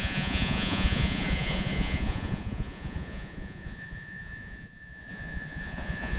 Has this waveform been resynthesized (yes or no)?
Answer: yes